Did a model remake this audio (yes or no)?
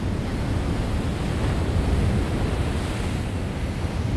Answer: no